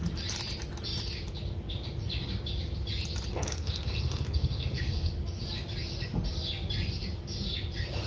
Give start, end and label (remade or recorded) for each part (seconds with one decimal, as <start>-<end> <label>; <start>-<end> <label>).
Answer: 0.0-3.3 recorded; 3.3-5.1 remade; 5.1-8.1 recorded